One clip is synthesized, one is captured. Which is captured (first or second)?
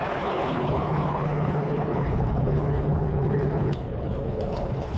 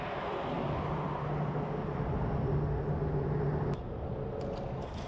second